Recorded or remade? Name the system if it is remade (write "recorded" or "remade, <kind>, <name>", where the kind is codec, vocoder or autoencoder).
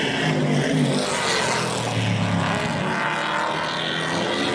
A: recorded